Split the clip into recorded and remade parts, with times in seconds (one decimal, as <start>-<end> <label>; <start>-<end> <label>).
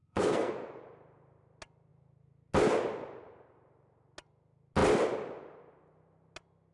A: 0.0-0.5 remade; 0.5-6.7 recorded